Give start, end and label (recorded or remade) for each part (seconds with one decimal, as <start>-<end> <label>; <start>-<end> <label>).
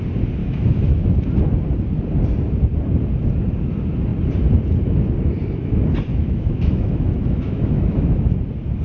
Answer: 0.0-0.4 recorded; 0.4-1.2 remade; 1.2-6.1 recorded; 6.1-8.4 remade; 8.4-8.8 recorded